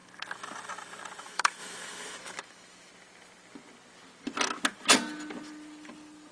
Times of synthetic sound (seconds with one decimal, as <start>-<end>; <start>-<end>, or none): 1.2-2.9